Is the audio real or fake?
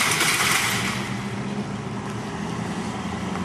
real